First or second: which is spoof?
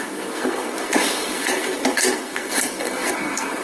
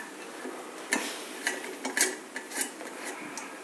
first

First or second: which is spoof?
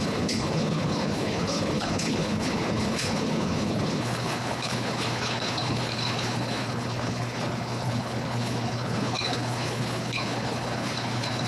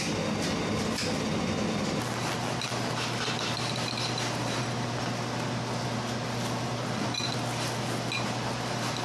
first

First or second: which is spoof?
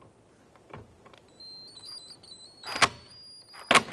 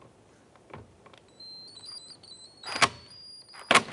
second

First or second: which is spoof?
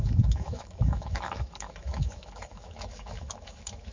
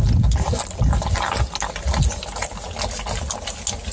first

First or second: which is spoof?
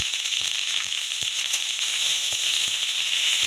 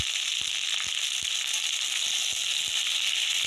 first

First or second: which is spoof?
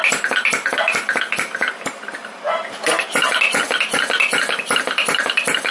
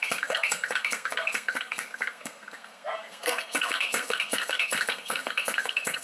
second